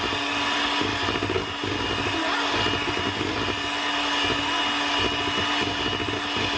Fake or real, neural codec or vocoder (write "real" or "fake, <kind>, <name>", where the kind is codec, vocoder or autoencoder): real